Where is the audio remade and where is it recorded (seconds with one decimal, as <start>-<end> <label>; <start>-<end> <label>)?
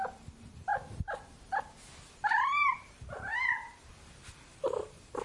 0.0-0.7 remade; 0.7-2.1 recorded; 2.1-5.2 remade